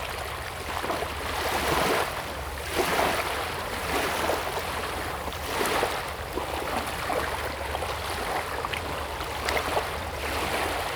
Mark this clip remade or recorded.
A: recorded